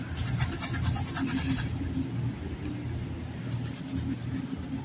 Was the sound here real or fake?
real